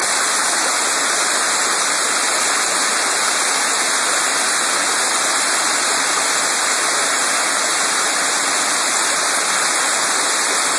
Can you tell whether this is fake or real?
real